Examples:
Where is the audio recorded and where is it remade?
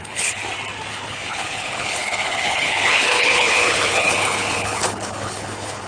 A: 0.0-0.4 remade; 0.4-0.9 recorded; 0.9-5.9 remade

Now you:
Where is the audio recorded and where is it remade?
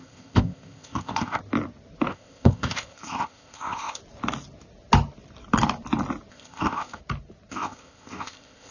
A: 0.0-1.4 remade; 1.4-2.1 recorded; 2.1-4.0 remade; 4.0-6.3 recorded; 6.3-7.0 remade; 7.0-7.5 recorded; 7.5-8.7 remade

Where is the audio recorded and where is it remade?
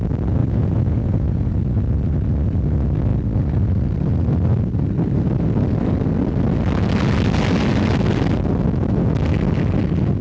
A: 0.0-0.4 recorded; 0.4-1.5 remade; 1.5-10.2 recorded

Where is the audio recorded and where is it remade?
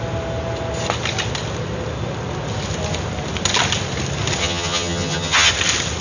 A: 0.0-4.4 recorded; 4.4-5.5 remade; 5.5-6.0 recorded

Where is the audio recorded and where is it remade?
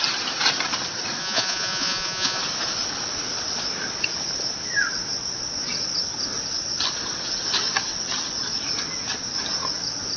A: 0.0-1.2 recorded; 1.2-2.4 remade; 2.4-10.2 recorded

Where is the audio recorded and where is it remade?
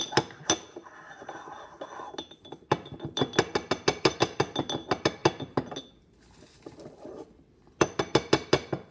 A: 0.0-8.9 recorded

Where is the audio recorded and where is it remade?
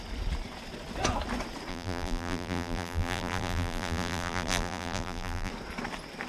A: 0.0-1.7 recorded; 1.7-5.5 remade; 5.5-6.3 recorded